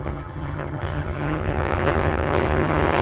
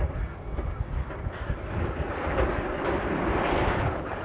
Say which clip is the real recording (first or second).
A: second